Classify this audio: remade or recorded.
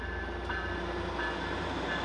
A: recorded